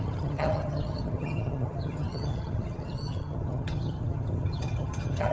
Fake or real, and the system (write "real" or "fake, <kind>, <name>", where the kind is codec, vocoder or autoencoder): fake, vocoder, HiFi-GAN